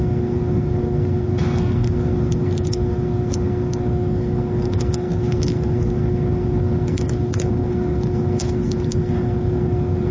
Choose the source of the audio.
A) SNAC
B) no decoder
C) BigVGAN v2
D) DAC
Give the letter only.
A